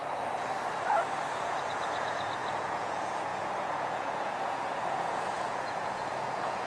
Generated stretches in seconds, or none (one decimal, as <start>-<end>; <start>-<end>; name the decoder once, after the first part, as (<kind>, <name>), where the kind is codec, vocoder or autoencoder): 1.3-6.7 (vocoder, Vocos)